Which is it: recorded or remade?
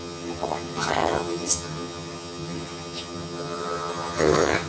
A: remade